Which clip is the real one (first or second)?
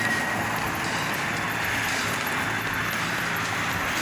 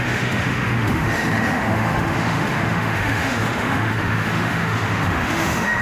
first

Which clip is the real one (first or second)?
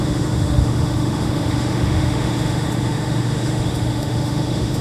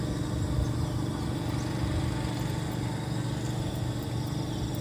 second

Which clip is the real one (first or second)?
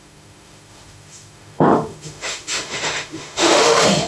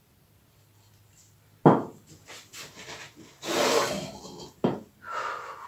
second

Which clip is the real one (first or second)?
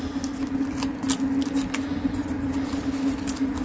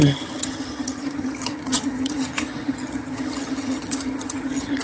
first